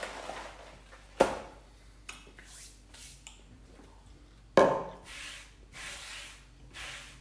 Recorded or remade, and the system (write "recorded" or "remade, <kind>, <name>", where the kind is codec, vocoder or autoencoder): recorded